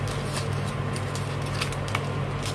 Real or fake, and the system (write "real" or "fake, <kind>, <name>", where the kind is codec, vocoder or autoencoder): real